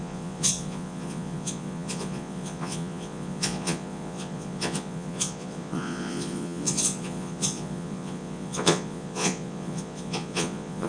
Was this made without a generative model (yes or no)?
no